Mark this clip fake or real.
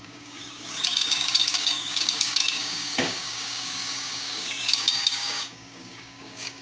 fake